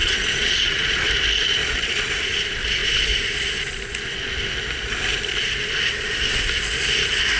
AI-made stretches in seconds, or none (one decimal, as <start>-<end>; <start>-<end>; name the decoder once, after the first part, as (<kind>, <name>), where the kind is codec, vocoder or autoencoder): 0.0-1.1 (vocoder, Vocos); 1.6-2.1